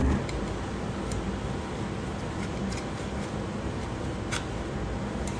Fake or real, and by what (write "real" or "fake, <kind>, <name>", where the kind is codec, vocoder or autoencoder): real